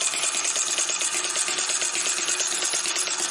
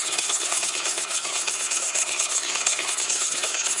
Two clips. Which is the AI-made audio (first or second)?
second